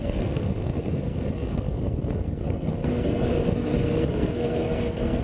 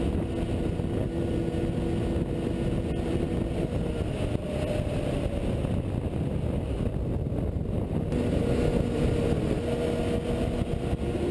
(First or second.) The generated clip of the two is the first